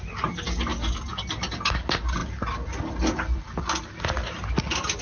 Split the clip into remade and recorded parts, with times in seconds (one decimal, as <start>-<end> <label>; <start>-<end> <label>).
0.0-5.0 recorded